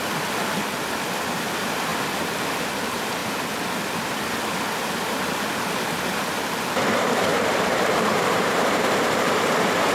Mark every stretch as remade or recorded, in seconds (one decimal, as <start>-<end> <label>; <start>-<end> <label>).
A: 0.0-7.3 recorded; 7.3-9.5 remade; 9.5-9.9 recorded